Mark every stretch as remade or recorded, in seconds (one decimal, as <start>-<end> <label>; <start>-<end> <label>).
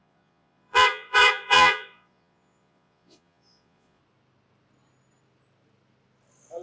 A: 0.0-4.0 remade; 4.0-6.6 recorded